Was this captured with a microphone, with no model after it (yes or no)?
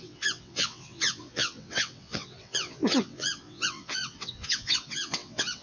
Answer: no